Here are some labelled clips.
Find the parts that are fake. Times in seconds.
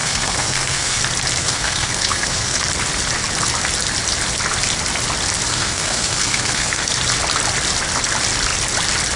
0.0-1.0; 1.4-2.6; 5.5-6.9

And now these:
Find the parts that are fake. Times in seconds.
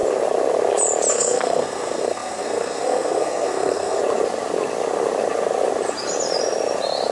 1.1-4.0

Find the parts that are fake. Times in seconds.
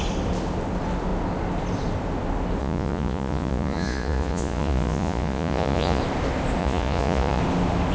2.6-6.0; 6.6-7.4